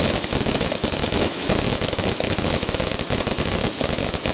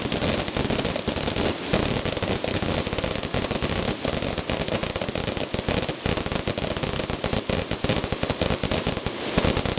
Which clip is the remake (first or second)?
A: first